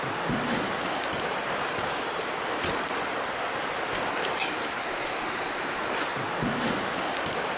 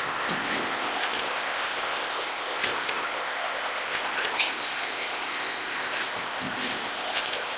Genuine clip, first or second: first